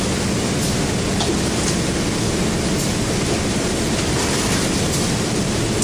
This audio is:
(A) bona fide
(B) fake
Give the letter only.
A